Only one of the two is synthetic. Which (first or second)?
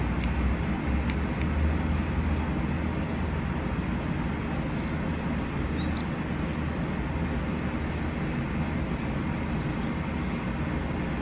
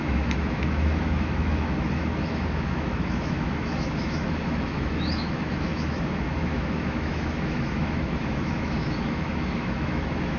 second